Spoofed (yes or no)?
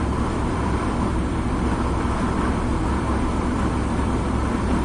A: yes